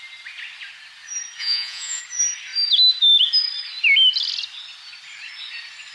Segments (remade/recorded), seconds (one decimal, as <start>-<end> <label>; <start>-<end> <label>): 0.0-1.4 recorded; 1.4-2.0 remade; 2.0-5.9 recorded